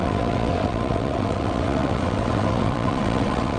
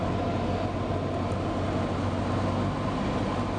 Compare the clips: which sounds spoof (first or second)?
first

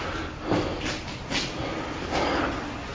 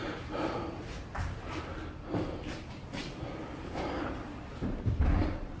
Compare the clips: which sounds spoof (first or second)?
second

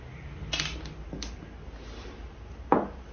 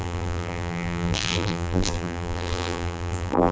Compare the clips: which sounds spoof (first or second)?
second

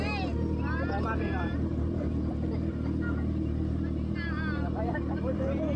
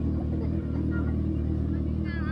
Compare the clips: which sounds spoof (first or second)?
first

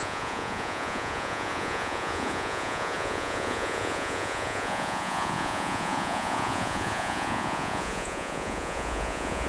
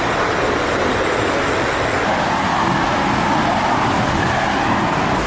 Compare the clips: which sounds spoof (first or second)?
first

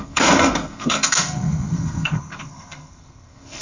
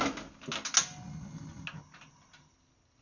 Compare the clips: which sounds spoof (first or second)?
first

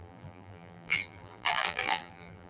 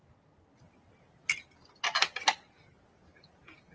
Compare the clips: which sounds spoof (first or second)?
first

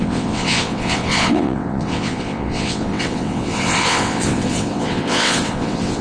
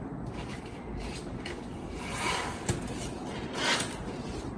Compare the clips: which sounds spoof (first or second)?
first